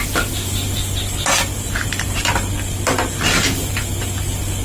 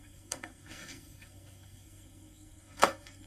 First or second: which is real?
first